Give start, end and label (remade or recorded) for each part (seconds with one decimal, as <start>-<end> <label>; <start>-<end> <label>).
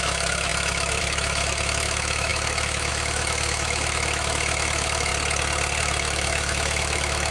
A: 0.0-5.1 remade; 5.1-5.8 recorded; 5.8-7.3 remade